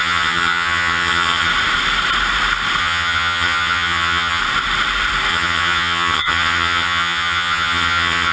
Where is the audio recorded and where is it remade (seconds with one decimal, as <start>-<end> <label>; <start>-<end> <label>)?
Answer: 0.0-1.5 remade; 1.5-2.8 recorded; 2.8-4.4 remade; 4.4-5.3 recorded; 5.3-8.3 remade